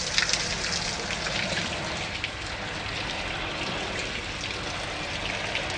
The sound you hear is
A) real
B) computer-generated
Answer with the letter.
A